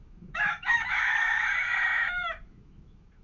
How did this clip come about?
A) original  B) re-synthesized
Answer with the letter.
B